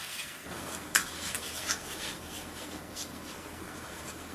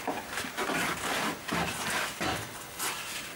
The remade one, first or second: first